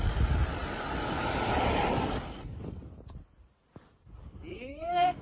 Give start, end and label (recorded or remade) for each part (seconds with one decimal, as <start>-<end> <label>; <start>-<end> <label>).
0.0-4.5 recorded; 4.5-5.2 remade